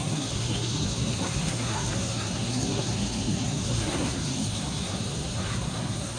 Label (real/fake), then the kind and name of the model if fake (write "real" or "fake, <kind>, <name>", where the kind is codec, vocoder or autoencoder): fake, codec, SNAC